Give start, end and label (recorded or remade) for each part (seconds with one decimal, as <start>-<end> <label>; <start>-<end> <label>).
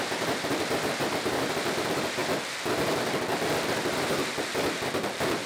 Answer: 0.0-2.2 remade; 2.2-4.9 recorded; 4.9-5.5 remade